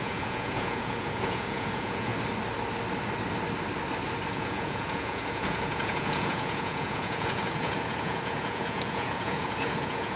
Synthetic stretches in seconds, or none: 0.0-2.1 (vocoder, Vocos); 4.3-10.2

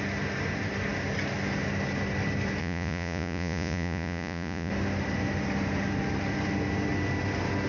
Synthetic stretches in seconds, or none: 2.6-4.7 (vocoder, Vocos)

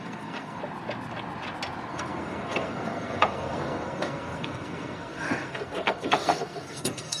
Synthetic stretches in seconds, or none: 0.0-0.6 (codec, SNAC); 1.9-7.2

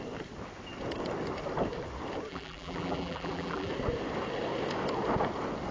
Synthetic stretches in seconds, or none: 2.3-3.7 (vocoder, BigVGAN v2)